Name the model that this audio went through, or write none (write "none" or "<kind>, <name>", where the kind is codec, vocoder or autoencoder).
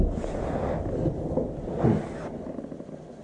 none